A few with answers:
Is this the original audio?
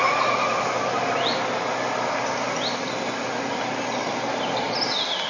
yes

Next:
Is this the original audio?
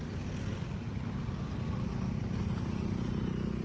yes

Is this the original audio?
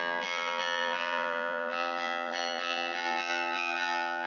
no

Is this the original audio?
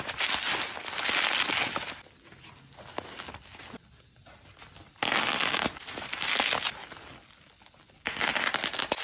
yes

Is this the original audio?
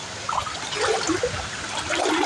yes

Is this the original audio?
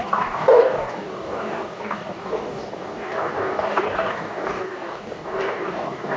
no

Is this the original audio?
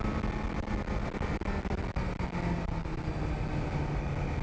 yes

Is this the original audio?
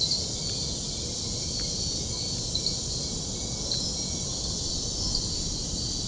yes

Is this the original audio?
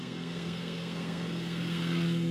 no